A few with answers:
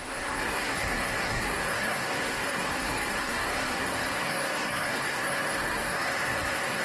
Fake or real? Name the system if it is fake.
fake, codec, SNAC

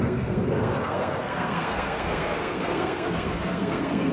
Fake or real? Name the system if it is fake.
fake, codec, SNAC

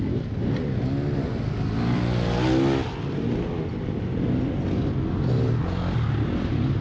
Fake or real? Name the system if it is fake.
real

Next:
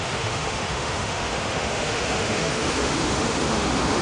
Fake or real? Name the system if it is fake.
fake, autoencoder, DAC-VAE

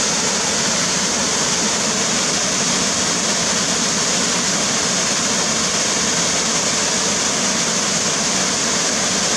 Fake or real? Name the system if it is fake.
real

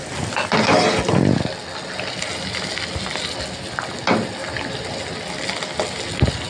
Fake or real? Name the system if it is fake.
real